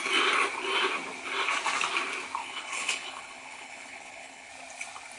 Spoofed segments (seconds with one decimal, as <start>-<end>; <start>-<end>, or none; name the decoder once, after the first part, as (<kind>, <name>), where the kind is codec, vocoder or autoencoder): 2.4-4.5 (codec, HILCodec)